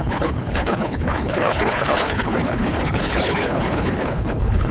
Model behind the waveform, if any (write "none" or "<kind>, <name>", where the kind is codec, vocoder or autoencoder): codec, HILCodec